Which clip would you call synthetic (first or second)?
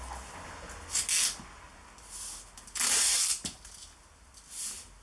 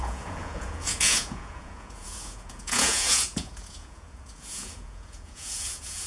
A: second